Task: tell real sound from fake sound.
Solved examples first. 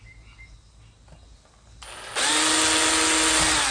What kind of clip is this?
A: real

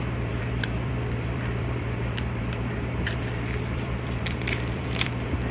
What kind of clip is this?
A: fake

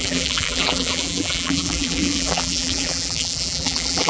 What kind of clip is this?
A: fake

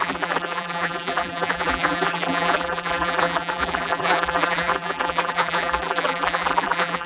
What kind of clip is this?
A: fake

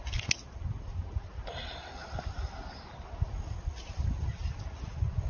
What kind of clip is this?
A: real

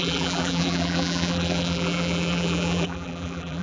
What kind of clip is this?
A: fake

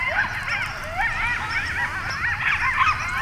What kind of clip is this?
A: real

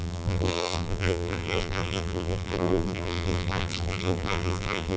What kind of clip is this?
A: fake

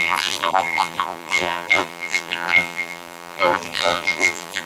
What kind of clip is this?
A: fake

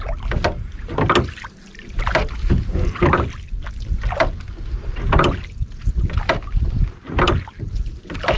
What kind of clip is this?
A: real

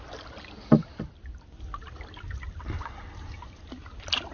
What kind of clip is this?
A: real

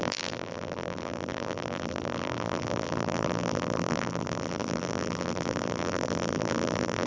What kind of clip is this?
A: fake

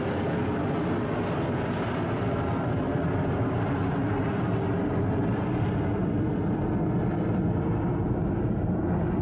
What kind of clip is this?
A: real